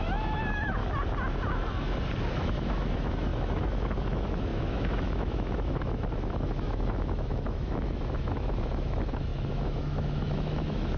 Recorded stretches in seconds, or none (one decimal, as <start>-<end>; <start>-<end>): 0.8-2.3